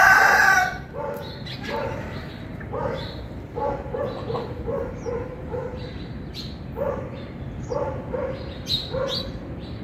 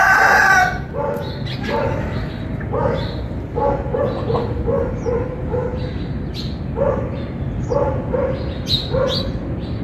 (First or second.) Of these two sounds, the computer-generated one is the first